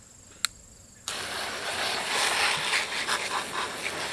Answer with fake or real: real